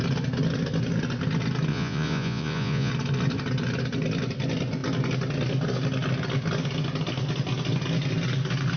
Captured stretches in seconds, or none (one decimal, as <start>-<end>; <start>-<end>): 0.0-1.7; 2.9-8.8